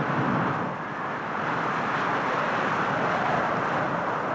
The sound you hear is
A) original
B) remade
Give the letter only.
A